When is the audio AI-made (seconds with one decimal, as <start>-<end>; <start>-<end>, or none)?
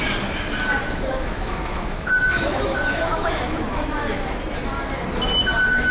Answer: 0.8-4.3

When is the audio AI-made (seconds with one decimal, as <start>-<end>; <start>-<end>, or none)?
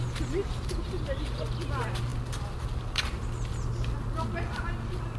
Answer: 0.4-1.0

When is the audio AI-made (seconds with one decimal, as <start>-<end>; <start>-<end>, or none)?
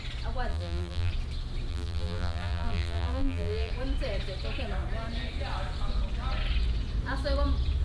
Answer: 0.5-1.1; 1.7-3.7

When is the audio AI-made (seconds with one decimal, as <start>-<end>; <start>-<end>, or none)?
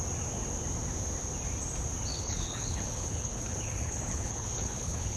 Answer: 2.1-5.2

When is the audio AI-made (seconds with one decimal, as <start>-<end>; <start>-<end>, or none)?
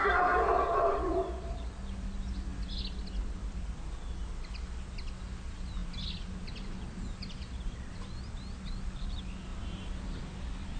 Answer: 0.0-0.6; 9.5-10.2